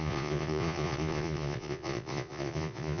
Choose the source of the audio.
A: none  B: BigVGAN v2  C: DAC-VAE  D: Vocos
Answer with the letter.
D